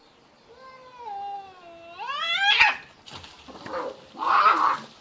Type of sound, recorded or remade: recorded